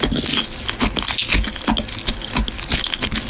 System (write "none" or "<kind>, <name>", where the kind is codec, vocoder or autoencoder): none